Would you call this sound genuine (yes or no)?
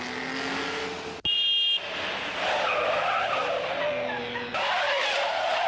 yes